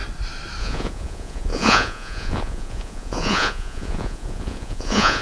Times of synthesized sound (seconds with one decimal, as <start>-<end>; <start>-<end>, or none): 0.6-5.2